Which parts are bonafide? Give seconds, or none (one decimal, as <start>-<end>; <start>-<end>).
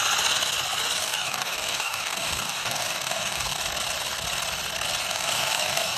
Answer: 0.0-1.0; 3.6-5.0